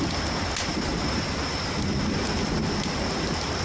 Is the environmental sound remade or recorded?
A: recorded